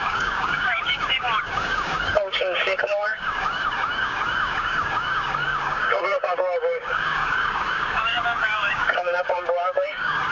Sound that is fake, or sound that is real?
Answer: fake